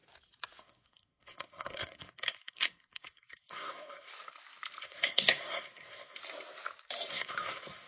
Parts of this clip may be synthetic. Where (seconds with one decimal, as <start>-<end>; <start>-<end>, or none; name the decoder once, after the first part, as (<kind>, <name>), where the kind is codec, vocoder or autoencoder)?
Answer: 0.6-4.1 (codec, SNAC); 4.8-6.2; 7.1-7.9